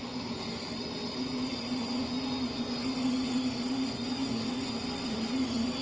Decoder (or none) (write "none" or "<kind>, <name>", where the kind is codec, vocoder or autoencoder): none